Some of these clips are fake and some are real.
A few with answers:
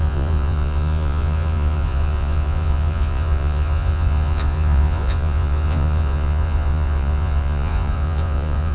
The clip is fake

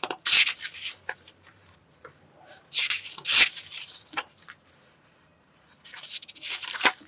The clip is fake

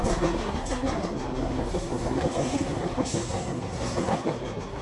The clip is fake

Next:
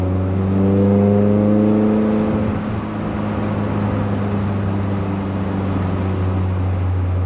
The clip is real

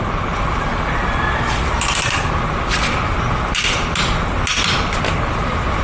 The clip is real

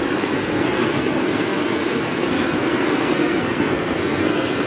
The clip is fake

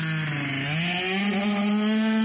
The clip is real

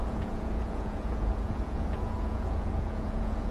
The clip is fake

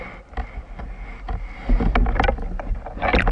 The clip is real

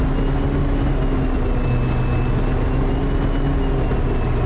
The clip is real